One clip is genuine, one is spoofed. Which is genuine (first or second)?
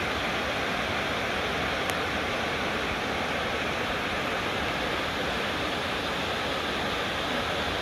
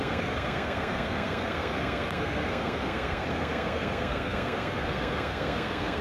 first